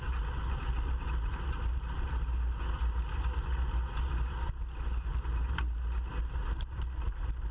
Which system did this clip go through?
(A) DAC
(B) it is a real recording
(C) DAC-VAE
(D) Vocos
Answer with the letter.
B